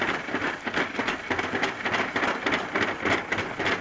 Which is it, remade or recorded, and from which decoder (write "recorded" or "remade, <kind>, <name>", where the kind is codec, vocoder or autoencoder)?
recorded